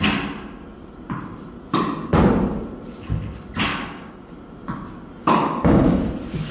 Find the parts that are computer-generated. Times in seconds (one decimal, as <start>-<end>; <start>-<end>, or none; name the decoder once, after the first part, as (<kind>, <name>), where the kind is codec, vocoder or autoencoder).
3.7-4.3 (codec, DAC); 5.2-6.0